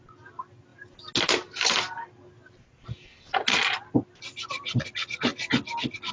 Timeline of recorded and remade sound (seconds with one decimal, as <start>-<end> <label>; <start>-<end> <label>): 0.0-6.1 recorded